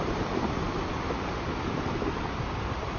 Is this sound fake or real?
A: real